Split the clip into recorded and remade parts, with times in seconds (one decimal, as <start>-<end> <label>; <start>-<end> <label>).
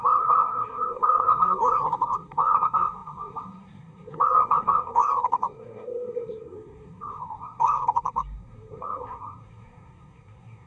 0.0-10.7 remade